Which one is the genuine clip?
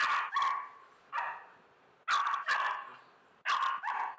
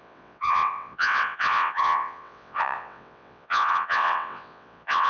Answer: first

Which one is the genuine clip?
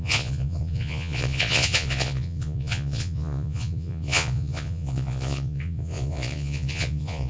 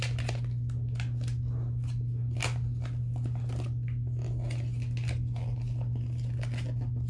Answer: second